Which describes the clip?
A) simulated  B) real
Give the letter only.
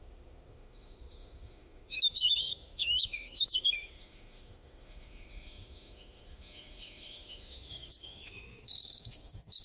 A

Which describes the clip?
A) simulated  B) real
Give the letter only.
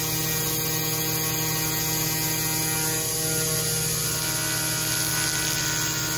B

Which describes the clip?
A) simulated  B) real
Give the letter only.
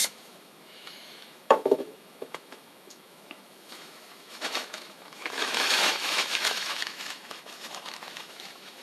A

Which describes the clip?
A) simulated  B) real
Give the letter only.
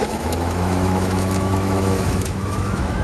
A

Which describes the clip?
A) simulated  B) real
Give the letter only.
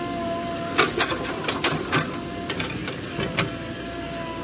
B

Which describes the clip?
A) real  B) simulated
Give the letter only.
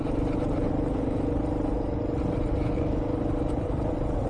A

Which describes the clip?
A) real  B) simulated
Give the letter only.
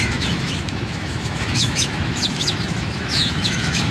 B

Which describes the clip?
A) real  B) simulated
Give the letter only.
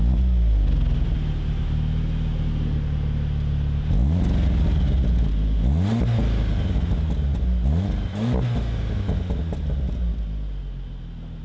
A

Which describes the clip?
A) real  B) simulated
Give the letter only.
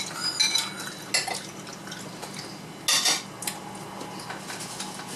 A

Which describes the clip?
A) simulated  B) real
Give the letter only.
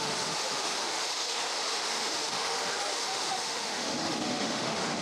A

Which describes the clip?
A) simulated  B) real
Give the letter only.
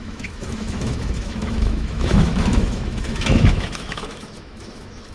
A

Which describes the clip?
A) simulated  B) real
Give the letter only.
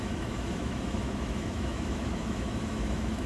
A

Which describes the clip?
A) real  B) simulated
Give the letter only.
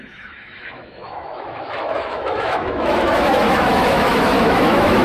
B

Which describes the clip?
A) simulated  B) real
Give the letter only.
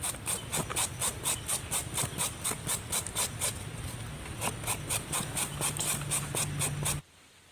B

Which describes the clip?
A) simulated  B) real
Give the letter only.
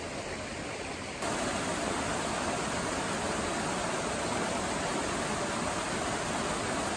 B